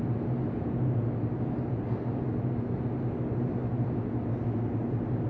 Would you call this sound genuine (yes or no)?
yes